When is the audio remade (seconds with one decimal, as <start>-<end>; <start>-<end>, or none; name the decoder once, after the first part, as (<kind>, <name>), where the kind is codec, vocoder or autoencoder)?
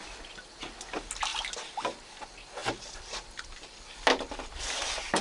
none